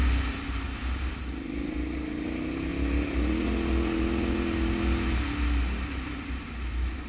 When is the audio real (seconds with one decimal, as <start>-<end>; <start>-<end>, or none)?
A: 0.0-7.1